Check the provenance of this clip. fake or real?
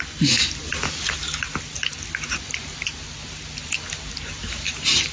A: real